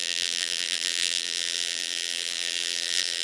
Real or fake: fake